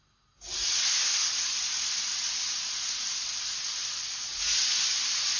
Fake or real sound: real